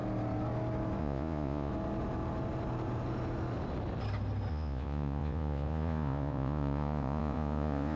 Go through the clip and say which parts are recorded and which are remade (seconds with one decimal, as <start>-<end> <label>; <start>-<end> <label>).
0.0-1.0 recorded; 1.0-1.7 remade; 1.7-4.5 recorded; 4.5-8.0 remade

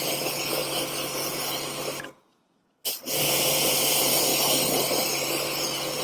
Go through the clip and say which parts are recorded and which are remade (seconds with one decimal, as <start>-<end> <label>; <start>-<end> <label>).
0.0-0.6 remade; 0.6-2.2 recorded; 2.2-4.3 remade; 4.3-5.3 recorded; 5.3-6.0 remade

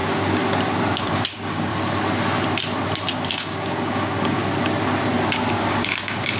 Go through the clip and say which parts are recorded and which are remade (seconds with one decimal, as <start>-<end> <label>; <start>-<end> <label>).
0.0-1.1 recorded; 1.1-1.7 remade; 1.7-3.3 recorded; 3.3-4.4 remade; 4.4-5.5 recorded; 5.5-6.4 remade

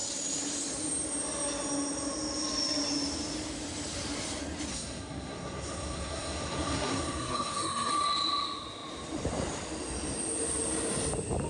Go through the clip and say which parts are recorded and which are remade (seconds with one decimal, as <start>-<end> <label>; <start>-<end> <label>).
0.0-4.7 recorded; 4.7-7.9 remade; 7.9-11.5 recorded

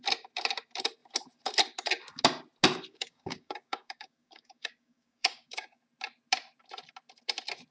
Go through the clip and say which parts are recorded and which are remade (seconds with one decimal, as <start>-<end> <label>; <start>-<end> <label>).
0.0-2.9 recorded; 2.9-5.8 remade; 5.8-7.7 recorded

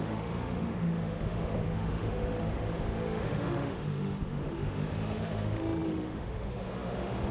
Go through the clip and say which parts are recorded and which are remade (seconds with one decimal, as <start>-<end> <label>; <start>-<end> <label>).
0.0-7.3 remade

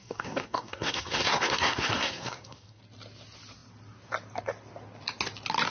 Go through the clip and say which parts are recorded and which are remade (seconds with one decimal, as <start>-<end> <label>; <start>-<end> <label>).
0.0-2.8 remade; 2.8-5.7 recorded